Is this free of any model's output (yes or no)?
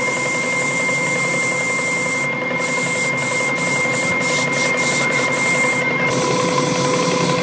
yes